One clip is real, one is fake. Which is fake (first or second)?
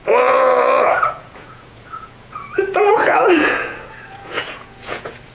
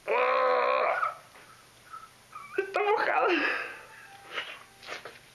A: first